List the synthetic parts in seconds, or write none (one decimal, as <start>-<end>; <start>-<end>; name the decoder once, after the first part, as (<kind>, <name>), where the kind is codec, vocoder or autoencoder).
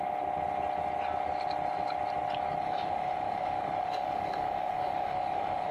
2.6-5.7 (autoencoder, DAC-VAE)